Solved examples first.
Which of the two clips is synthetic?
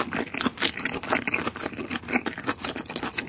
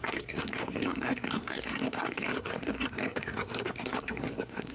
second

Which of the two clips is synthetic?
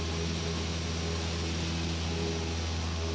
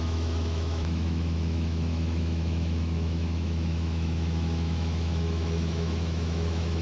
second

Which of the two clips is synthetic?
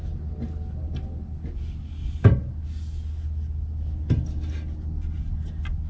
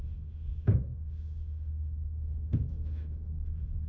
second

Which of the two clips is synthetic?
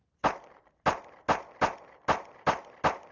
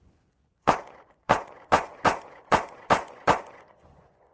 second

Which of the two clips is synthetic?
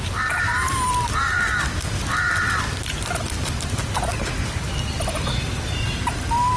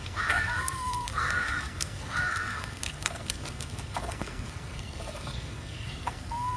second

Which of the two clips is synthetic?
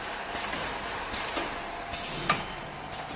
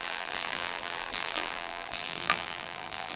second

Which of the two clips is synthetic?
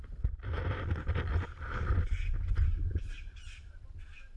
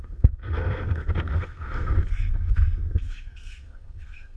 second